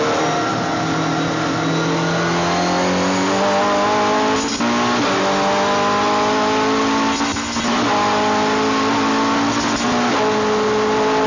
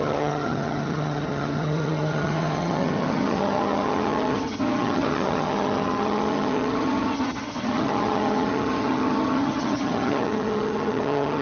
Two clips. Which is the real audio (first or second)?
first